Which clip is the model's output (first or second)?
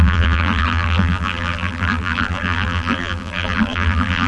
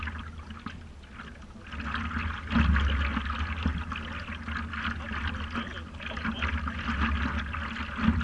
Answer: first